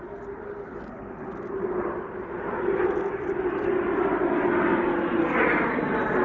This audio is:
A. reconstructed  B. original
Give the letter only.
B